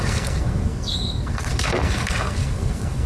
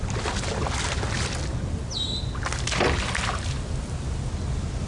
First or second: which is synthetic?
first